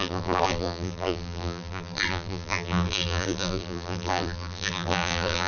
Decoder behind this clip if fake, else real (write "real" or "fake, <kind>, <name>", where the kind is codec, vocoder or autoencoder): fake, vocoder, BigVGAN v2